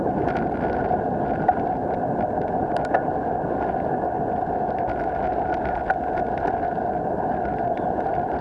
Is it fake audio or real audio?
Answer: real